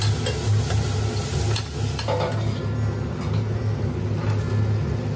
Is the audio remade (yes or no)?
no